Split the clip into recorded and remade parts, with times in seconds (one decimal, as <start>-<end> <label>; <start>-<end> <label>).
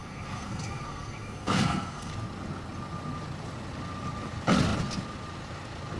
0.0-2.1 remade; 2.1-6.0 recorded